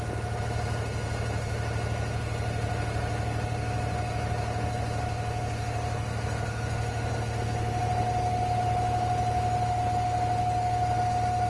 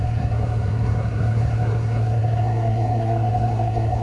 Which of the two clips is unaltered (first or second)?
first